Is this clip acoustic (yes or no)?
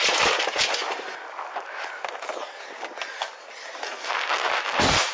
yes